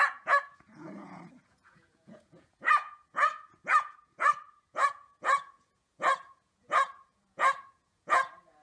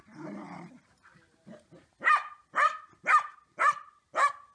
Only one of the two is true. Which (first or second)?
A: second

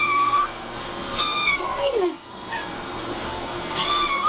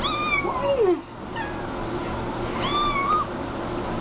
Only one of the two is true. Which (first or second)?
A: second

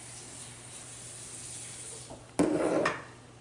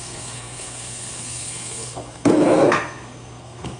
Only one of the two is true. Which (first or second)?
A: first